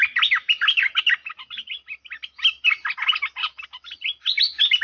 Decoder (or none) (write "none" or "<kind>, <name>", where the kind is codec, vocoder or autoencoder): none